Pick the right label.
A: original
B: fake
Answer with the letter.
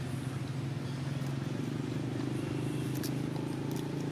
A